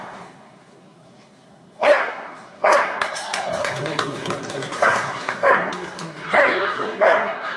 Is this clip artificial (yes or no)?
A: yes